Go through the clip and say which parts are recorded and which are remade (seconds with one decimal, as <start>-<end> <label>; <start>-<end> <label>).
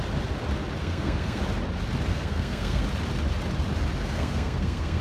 0.0-0.8 recorded; 0.8-1.4 remade; 1.4-2.1 recorded; 2.1-2.8 remade; 2.8-4.0 recorded; 4.0-5.0 remade